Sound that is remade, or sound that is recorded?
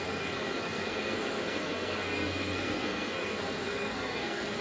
remade